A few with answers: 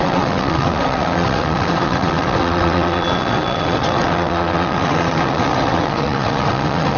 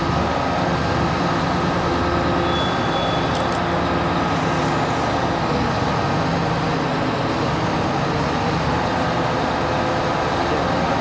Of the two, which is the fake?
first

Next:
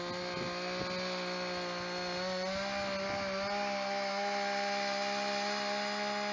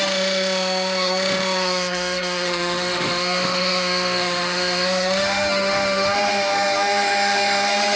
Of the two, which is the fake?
second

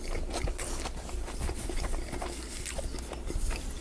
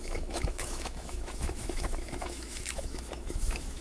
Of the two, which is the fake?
second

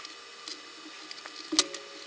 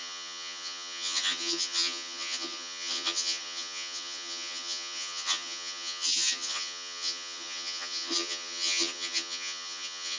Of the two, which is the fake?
second